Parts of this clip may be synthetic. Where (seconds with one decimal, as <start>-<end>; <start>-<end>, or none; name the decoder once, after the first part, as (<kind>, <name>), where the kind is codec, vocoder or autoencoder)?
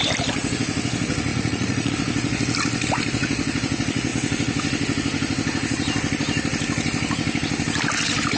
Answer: 1.3-1.9 (vocoder, Vocos)